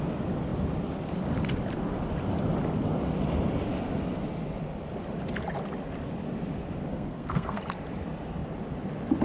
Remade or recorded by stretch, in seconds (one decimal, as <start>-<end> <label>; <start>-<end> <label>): 0.0-6.9 recorded; 6.9-7.6 remade; 7.6-9.2 recorded